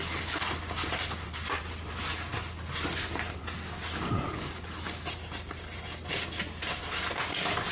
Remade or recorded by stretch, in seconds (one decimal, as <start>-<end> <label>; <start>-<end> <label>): 0.0-0.8 recorded; 0.8-1.6 remade; 1.6-7.7 recorded